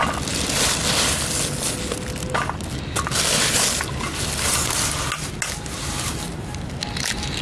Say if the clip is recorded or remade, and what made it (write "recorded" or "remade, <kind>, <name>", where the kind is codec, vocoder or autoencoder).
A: recorded